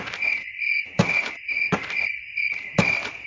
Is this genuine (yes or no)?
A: yes